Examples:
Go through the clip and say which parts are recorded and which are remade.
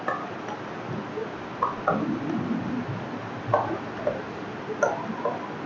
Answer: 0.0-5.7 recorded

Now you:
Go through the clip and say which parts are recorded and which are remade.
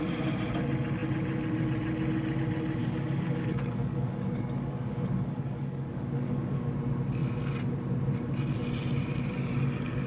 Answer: 0.0-2.8 recorded; 2.8-6.7 remade; 6.7-10.1 recorded